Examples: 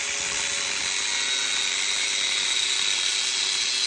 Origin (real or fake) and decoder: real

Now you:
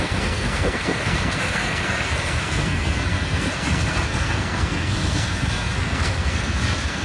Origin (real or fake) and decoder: fake, codec, SNAC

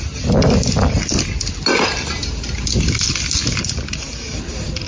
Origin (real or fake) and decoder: real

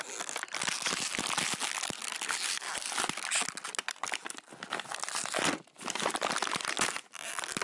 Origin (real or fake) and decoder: real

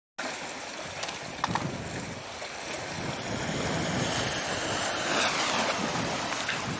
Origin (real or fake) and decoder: real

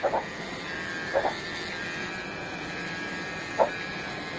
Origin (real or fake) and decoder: real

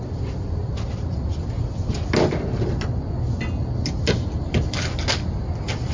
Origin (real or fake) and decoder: real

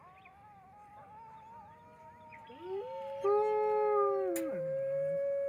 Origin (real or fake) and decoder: real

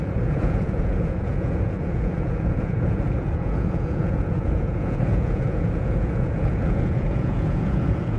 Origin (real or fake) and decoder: fake, vocoder, Vocos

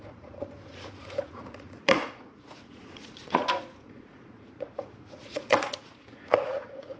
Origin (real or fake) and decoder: fake, vocoder, Vocos